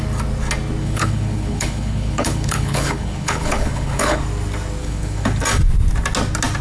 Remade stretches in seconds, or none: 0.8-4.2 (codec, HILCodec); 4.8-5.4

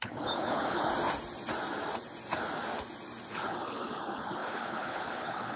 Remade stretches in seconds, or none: 0.0-0.9 (codec, HILCodec); 3.3-5.6

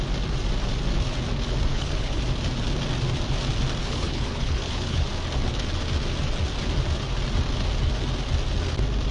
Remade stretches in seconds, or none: 1.7-2.2 (codec, HILCodec); 3.8-5.1

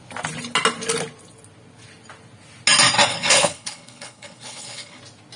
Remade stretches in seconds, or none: 3.1-5.0 (codec, HILCodec)